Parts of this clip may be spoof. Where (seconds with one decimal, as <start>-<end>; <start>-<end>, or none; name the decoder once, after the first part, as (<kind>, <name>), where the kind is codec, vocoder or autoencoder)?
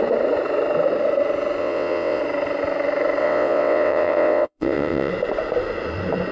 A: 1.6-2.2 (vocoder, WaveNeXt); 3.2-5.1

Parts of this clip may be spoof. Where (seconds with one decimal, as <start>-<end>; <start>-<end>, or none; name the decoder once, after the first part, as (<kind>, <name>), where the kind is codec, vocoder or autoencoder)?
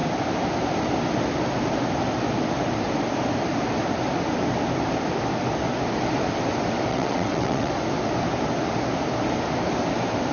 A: 6.9-7.7 (vocoder, WaveNeXt)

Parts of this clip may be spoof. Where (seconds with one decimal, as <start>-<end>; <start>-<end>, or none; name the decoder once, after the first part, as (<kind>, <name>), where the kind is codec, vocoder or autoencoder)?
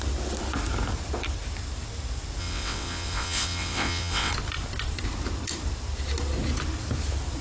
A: 2.4-4.3 (vocoder, WaveNeXt)